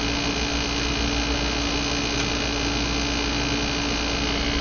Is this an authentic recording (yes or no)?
yes